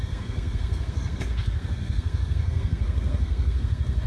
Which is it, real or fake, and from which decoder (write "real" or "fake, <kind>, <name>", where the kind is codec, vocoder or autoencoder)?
fake, codec, SNAC